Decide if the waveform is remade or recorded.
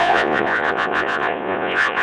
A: remade